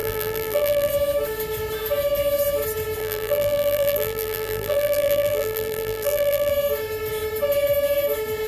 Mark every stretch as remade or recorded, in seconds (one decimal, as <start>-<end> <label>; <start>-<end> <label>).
0.0-0.9 remade; 0.9-3.0 recorded; 3.0-6.5 remade; 6.5-8.5 recorded

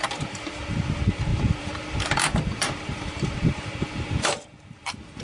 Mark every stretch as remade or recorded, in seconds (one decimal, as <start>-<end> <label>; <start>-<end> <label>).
0.0-5.2 remade